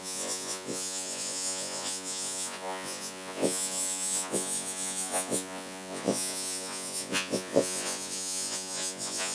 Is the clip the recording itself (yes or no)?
no